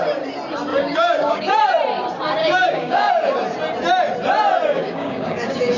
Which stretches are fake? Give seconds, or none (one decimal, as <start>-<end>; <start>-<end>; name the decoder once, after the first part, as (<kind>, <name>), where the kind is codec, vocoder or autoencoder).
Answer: 0.7-1.6 (codec, DAC); 2.4-3.1; 4.7-5.8